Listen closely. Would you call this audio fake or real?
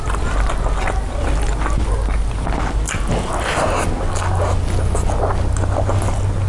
real